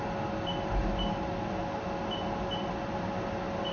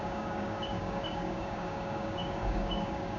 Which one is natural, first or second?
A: first